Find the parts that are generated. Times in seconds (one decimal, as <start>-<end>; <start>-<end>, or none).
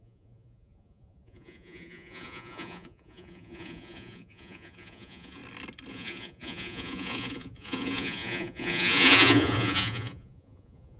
0.0-5.4; 5.9-11.0